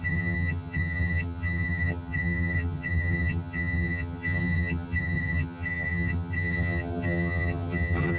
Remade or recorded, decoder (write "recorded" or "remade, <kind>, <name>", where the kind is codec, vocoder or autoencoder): remade, vocoder, HiFi-GAN